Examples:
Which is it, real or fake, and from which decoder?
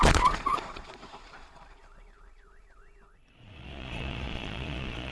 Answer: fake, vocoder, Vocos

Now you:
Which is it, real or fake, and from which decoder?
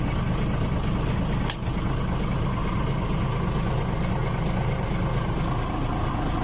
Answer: real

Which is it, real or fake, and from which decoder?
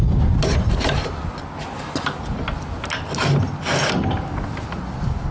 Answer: real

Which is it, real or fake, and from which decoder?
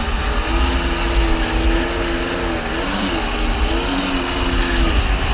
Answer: real